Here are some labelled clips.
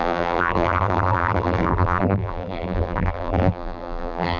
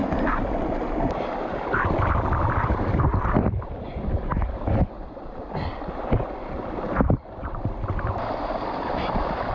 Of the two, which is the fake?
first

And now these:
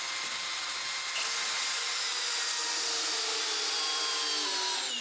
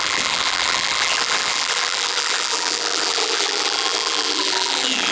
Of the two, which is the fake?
second